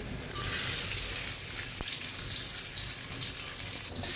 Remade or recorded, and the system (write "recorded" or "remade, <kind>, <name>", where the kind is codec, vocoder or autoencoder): recorded